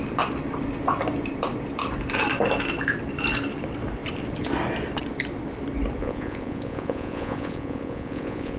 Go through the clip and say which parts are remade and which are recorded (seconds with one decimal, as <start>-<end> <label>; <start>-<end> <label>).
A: 0.0-6.0 recorded; 6.0-8.6 remade